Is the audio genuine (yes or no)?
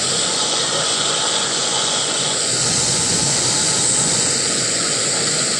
no